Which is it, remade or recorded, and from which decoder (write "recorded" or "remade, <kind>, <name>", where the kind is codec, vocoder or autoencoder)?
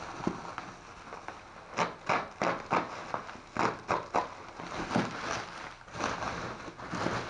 recorded